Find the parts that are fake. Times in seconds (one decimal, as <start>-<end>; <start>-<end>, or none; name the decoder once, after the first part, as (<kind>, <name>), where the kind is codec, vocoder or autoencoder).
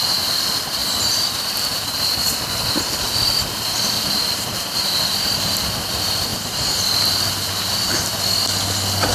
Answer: 0.8-2.6 (vocoder, BigVGAN v2); 6.3-6.8